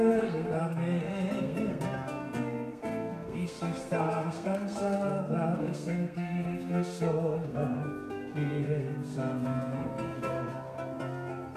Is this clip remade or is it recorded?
remade